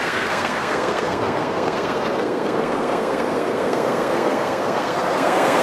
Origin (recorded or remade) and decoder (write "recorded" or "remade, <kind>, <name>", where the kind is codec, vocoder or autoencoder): remade, codec, SNAC